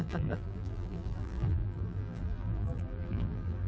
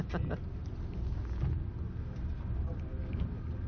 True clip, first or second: second